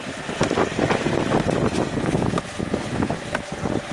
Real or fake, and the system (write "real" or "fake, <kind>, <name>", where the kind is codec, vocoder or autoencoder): real